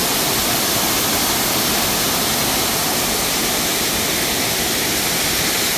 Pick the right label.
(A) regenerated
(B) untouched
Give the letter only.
B